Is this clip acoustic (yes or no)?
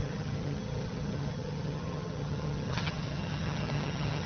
no